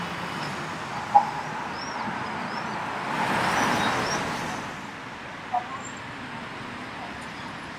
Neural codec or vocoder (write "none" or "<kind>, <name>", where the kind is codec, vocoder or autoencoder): none